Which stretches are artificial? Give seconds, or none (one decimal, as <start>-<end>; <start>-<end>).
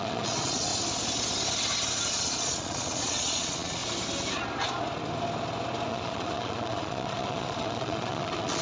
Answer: 0.0-0.7; 2.1-3.8; 5.9-8.6